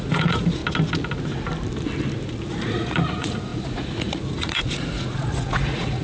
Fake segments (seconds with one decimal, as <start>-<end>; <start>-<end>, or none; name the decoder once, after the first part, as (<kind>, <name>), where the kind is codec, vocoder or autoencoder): 0.0-0.6 (vocoder, Vocos); 2.5-6.0